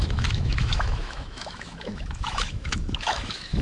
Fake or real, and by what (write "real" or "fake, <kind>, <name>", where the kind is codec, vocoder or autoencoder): fake, autoencoder, DAC-VAE